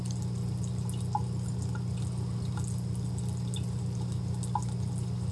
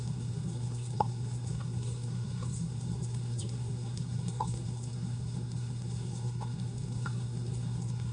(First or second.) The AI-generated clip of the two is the second